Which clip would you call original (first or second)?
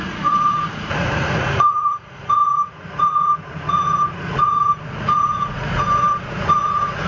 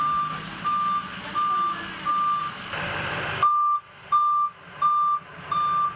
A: second